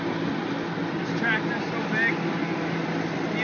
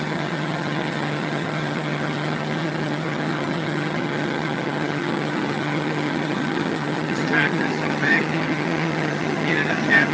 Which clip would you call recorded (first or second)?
first